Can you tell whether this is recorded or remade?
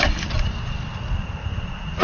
recorded